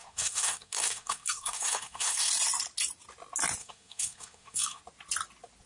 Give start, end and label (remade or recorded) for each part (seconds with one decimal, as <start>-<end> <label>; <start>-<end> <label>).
0.0-2.3 remade; 2.3-3.6 recorded; 3.6-4.8 remade; 4.8-5.7 recorded